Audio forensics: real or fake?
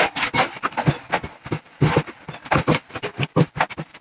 real